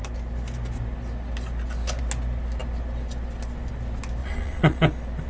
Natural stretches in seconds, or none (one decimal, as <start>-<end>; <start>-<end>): 0.0-4.2; 4.8-5.3